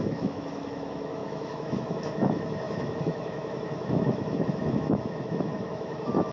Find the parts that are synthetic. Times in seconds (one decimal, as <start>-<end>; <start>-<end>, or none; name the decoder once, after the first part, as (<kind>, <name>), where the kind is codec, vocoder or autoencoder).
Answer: 0.0-6.3 (autoencoder, DAC-VAE)